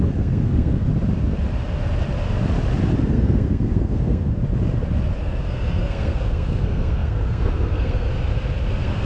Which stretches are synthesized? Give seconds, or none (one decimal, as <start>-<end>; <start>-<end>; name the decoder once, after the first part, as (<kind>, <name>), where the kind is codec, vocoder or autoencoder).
0.0-0.9 (codec, SNAC); 3.0-4.4; 5.2-8.1; 8.7-9.1